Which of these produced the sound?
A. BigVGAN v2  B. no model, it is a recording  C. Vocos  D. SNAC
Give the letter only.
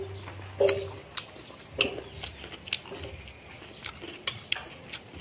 B